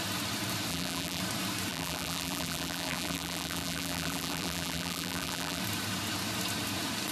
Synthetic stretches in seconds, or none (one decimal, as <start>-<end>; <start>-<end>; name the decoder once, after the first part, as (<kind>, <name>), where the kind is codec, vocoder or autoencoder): 0.7-1.2 (vocoder, BigVGAN v2); 1.7-5.6